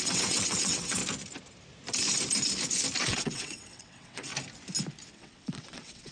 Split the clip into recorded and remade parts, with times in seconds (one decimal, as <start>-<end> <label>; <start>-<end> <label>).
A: 0.0-1.0 remade; 1.0-3.0 recorded; 3.0-4.3 remade; 4.3-5.1 recorded; 5.1-6.1 remade